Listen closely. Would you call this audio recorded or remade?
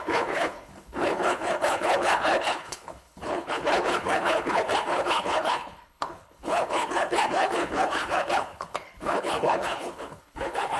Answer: remade